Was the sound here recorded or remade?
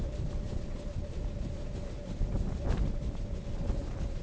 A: recorded